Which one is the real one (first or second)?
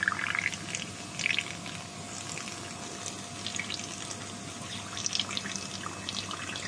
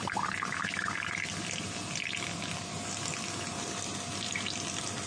first